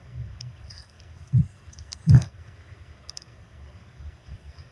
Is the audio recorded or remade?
remade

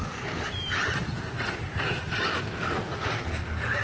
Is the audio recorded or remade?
recorded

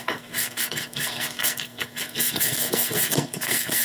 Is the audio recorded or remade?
remade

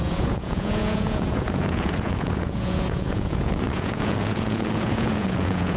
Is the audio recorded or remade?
remade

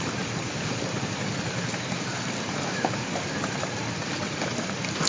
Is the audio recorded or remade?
remade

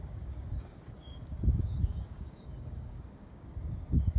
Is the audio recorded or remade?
remade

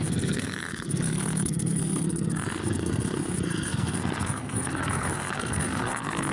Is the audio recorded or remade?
remade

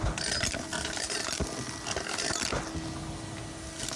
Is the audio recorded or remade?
recorded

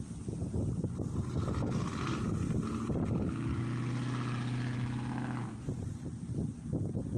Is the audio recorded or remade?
recorded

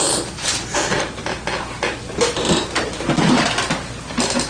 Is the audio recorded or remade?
recorded